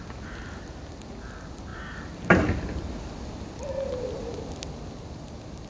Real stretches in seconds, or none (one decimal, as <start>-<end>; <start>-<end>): 0.0-5.7